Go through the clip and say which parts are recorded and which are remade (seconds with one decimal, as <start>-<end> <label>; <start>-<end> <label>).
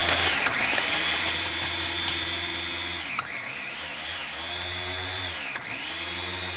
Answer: 0.0-2.5 remade; 2.5-3.1 recorded; 3.1-6.6 remade